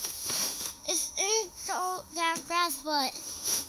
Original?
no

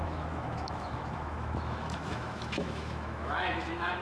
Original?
no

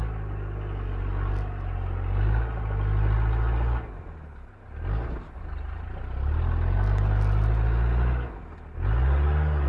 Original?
yes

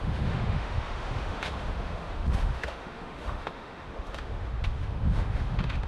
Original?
no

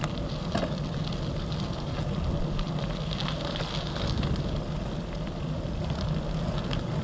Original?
yes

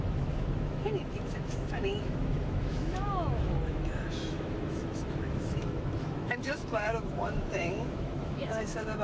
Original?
no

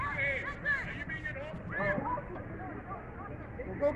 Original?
yes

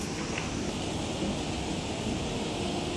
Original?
yes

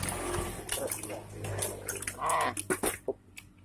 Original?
yes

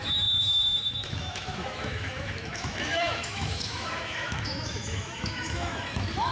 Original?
no